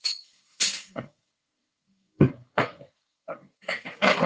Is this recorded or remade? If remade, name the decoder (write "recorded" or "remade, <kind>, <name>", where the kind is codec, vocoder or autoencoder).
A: remade, codec, SNAC